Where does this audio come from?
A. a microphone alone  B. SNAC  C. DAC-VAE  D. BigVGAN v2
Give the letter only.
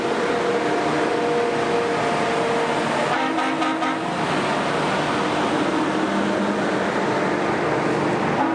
A